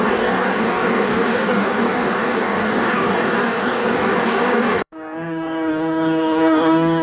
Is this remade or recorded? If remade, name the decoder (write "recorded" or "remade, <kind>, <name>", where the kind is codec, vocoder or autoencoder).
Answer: remade, codec, DAC